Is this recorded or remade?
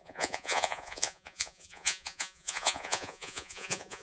remade